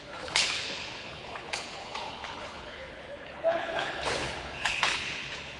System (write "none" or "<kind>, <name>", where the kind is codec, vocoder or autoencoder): codec, HILCodec